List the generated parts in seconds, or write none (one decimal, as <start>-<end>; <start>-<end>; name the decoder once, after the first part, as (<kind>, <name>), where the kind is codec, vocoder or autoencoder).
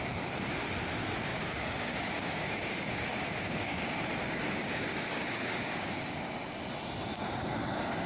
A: 1.3-6.2 (codec, DAC)